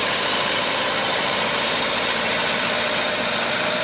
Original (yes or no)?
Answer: no